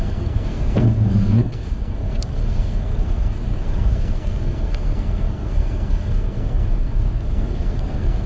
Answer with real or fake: fake